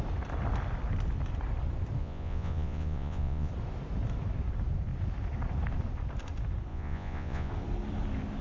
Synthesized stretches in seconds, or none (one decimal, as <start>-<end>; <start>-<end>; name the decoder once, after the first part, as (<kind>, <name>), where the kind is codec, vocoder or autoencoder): 2.0-3.5 (vocoder, Vocos); 6.7-7.5